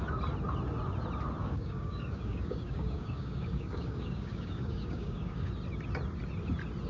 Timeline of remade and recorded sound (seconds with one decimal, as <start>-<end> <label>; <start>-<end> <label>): 0.0-1.4 recorded; 1.4-5.5 remade; 5.5-6.9 recorded